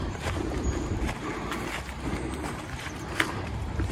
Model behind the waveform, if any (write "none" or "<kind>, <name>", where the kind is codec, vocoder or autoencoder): vocoder, BigVGAN v2